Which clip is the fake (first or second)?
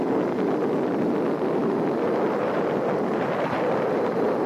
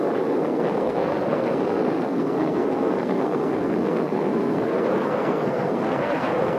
second